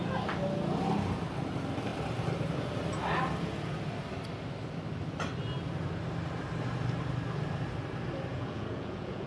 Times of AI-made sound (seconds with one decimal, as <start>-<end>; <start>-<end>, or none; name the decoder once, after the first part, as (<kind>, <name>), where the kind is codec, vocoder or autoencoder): 8.3-9.3 (vocoder, Vocos)